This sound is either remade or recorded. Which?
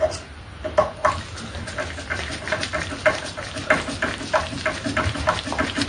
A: recorded